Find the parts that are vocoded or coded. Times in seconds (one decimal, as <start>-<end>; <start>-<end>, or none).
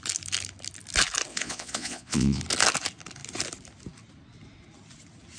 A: 1.3-2.4